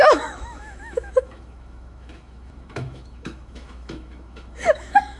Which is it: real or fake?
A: fake